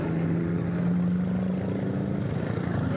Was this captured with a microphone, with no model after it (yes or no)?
yes